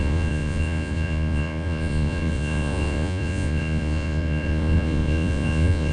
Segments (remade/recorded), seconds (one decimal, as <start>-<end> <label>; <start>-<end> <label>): 0.0-5.9 remade